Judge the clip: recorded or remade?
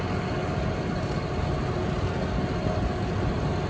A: recorded